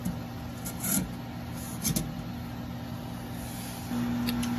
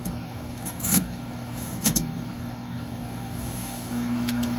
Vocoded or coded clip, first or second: second